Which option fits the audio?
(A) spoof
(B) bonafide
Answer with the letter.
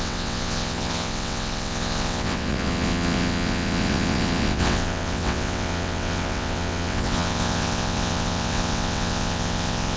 A